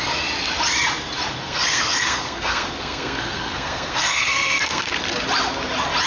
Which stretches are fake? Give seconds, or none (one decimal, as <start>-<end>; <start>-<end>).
1.4-4.9